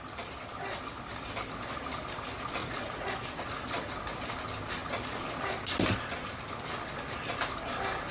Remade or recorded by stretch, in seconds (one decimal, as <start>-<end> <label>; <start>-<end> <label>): 0.0-2.6 recorded; 2.6-3.1 remade; 3.1-8.1 recorded